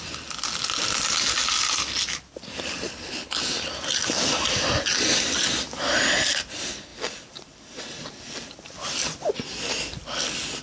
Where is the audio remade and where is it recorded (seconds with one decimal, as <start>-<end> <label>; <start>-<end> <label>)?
0.0-2.9 recorded; 2.9-3.4 remade; 3.4-10.6 recorded